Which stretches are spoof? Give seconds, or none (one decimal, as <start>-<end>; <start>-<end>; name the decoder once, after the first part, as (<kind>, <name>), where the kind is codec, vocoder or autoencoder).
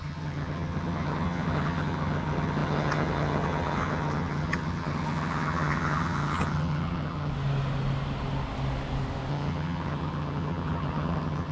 0.0-7.3 (vocoder, HiFi-GAN); 9.3-11.5